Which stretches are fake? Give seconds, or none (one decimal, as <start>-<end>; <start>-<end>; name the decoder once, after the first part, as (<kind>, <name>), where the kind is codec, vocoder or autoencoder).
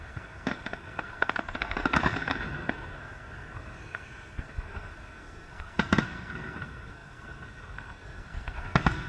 0.0-9.1 (codec, SNAC)